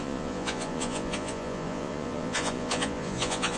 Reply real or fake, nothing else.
fake